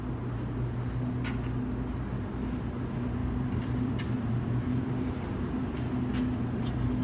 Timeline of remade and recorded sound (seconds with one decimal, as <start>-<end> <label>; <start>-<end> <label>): 0.0-3.2 recorded; 3.2-5.6 remade; 5.6-7.0 recorded